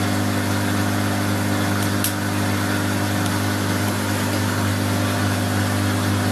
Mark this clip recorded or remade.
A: recorded